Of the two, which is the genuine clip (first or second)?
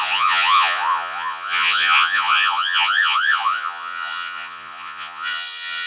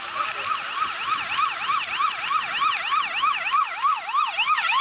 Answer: second